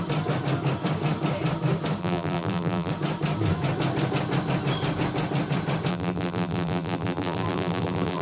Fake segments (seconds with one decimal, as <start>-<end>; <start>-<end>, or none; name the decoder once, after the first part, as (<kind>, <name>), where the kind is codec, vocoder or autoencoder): 2.0-2.9 (vocoder, BigVGAN v2); 5.9-8.2

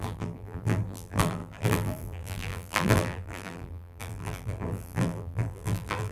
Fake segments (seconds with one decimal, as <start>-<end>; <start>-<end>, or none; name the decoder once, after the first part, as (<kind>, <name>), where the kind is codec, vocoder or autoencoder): 0.0-6.1 (vocoder, BigVGAN v2)